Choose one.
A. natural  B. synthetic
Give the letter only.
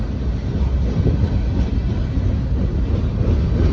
A